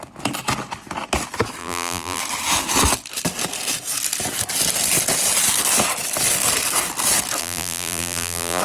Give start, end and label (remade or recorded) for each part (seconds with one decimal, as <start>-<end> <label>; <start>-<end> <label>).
0.0-1.6 recorded; 1.6-2.2 remade; 2.2-7.4 recorded; 7.4-8.6 remade